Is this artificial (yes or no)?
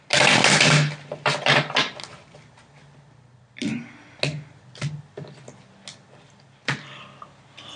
no